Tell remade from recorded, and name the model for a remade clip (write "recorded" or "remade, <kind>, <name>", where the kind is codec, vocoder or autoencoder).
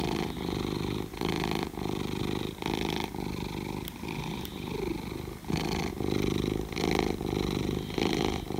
recorded